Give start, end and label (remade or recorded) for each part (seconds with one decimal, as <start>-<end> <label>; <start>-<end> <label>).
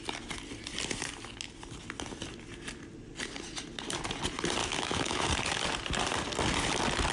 0.0-4.6 recorded; 4.6-5.3 remade; 5.3-7.1 recorded